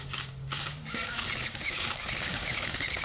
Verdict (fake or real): fake